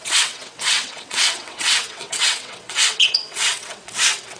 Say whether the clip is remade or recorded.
remade